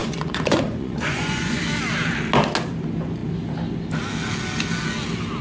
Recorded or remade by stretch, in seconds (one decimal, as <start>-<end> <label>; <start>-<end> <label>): 0.0-1.6 remade; 1.6-5.4 recorded